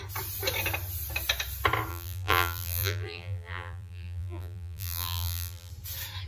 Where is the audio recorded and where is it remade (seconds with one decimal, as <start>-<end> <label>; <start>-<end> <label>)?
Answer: 0.0-1.9 recorded; 1.9-5.7 remade; 5.7-6.3 recorded

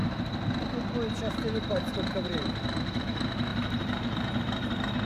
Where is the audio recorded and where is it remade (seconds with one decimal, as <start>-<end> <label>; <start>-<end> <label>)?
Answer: 0.0-3.5 recorded; 3.5-4.4 remade; 4.4-5.0 recorded

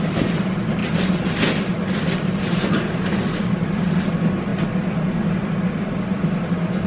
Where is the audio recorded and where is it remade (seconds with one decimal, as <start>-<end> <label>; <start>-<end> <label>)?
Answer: 0.0-4.5 remade; 4.5-5.9 recorded; 5.9-6.9 remade

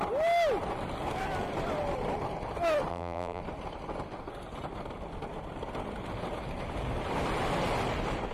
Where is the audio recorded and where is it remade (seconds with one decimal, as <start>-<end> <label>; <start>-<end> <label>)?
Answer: 0.0-2.9 recorded; 2.9-3.4 remade; 3.4-8.3 recorded

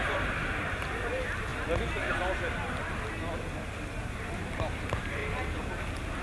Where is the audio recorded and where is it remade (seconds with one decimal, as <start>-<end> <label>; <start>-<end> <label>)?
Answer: 0.0-1.5 remade; 1.5-4.0 recorded; 4.0-5.2 remade; 5.2-6.2 recorded